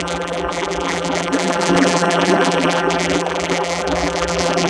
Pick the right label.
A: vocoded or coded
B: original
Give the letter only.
A